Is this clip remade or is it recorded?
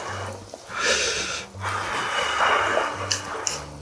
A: recorded